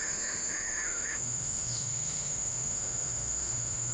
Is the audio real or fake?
fake